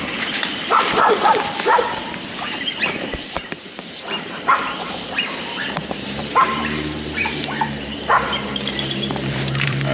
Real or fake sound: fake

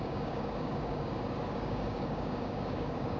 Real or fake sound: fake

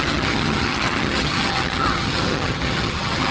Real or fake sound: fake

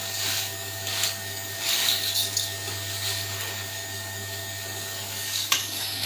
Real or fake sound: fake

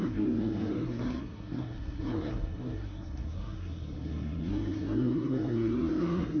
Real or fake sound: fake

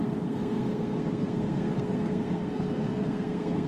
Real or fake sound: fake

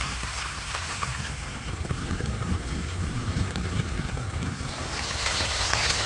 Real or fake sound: fake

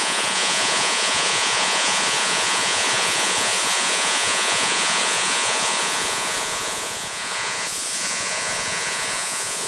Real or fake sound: fake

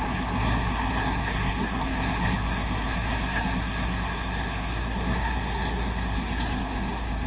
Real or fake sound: fake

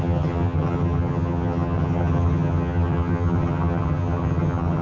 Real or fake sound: fake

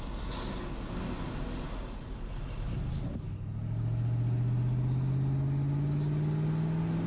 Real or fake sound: real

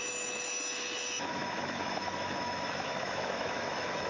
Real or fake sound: fake